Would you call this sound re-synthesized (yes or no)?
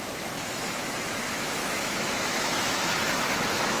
yes